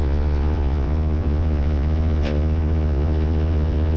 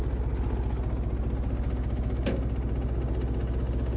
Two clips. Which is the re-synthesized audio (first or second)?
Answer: first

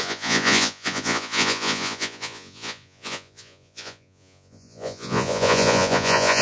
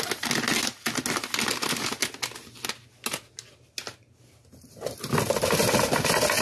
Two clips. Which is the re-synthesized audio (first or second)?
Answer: first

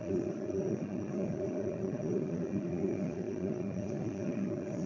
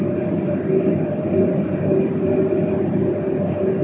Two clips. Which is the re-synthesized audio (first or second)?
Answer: first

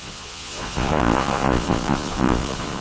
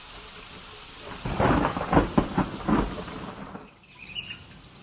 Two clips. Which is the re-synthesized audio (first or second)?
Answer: first